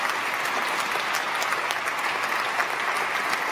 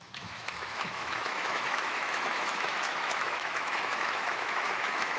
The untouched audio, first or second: first